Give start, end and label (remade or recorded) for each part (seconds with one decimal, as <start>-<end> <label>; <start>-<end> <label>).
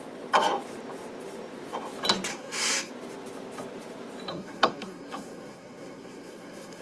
0.0-2.3 recorded; 2.3-2.9 remade; 2.9-4.3 recorded; 4.3-6.8 remade